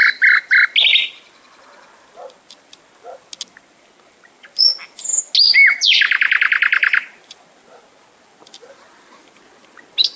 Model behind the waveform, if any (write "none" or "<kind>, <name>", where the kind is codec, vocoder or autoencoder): none